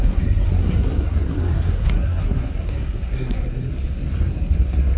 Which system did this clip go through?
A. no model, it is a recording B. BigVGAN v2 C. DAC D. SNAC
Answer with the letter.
D